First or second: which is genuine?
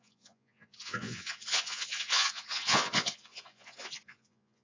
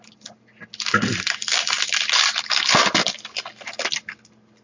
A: second